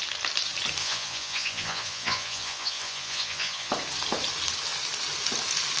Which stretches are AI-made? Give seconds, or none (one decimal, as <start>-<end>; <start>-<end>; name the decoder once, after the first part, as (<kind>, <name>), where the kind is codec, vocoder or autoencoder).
0.8-3.7 (vocoder, Vocos)